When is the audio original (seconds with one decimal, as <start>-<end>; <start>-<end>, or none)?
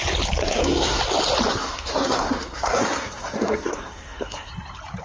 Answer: 0.0-0.4; 1.0-1.5; 4.5-5.0